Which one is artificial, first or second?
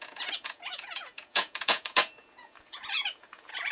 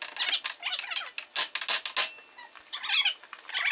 first